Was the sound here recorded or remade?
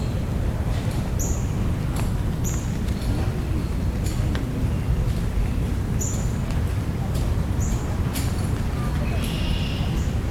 recorded